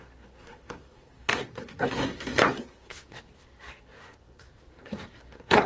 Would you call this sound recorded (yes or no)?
no